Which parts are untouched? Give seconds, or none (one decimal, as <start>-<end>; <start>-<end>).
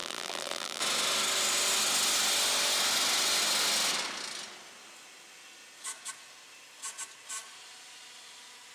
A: 0.8-8.7